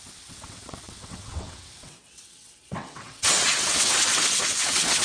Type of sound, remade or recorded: remade